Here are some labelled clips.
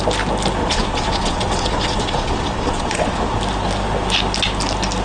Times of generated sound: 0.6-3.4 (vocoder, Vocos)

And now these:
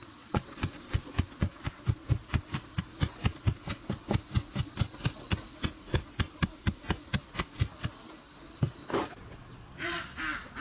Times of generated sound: 0.0-1.8 (vocoder, Vocos); 9.2-10.2

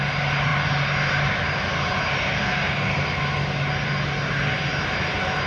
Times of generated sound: 2.4-3.2 (codec, SNAC)

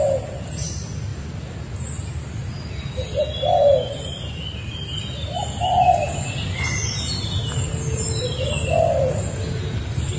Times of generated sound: none

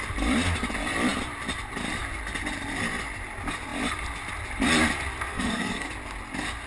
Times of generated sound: 5.3-5.9 (codec, SNAC)